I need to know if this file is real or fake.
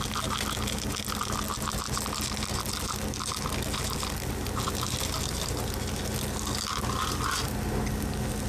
real